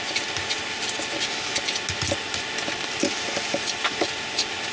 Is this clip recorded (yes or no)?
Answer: yes